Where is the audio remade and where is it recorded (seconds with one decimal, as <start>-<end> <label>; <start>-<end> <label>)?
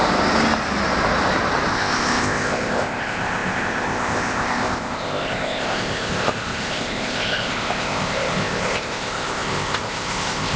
0.0-1.7 recorded; 1.7-10.6 remade